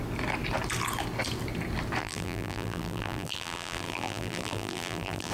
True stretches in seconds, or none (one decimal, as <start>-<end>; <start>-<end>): 0.0-2.0